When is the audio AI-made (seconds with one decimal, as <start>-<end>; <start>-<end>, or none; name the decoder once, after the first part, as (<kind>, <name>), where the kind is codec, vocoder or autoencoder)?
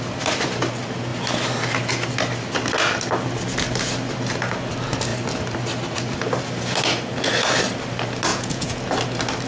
8.3-8.8 (vocoder, Vocos)